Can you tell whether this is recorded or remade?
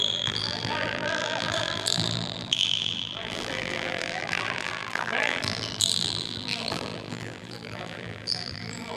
remade